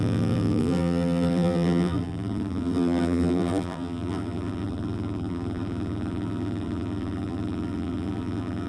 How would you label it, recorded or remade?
remade